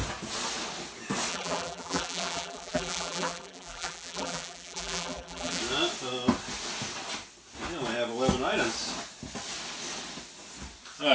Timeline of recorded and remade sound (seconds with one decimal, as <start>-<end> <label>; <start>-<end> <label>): 0.0-1.3 recorded; 1.3-5.6 remade; 5.6-11.1 recorded